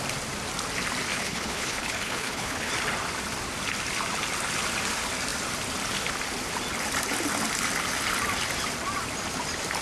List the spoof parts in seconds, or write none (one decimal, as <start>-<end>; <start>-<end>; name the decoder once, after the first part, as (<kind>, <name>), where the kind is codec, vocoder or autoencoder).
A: 1.1-2.7 (codec, HILCodec)